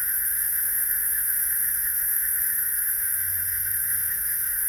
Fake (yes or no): yes